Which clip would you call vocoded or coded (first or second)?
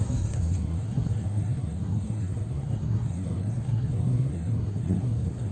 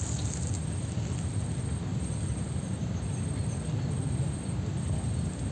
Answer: first